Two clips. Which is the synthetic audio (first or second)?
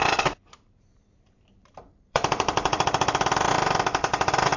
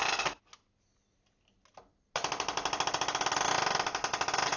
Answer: first